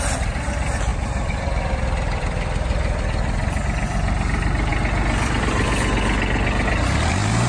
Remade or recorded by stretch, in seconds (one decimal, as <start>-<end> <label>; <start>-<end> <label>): 0.0-4.7 remade; 4.7-7.1 recorded; 7.1-7.5 remade